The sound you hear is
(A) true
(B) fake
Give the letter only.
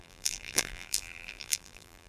B